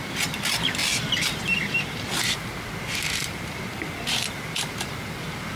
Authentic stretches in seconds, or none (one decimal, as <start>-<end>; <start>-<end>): 0.0-5.6